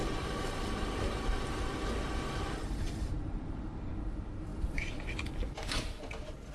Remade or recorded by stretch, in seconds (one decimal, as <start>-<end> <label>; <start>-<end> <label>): 0.0-3.9 remade; 3.9-4.5 recorded; 4.5-5.3 remade; 5.3-6.5 recorded